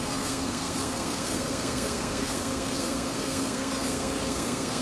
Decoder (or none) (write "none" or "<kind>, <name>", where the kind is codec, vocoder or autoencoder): codec, SNAC